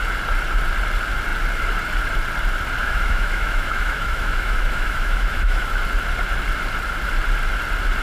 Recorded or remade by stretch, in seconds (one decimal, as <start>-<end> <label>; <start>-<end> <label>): 0.0-2.8 recorded; 2.8-5.8 remade; 5.8-8.0 recorded